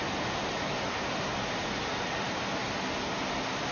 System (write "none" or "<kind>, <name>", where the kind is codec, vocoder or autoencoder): none